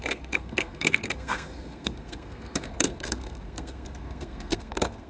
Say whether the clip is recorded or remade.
remade